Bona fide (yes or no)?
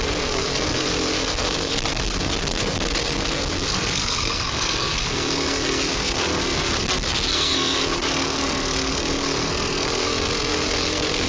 no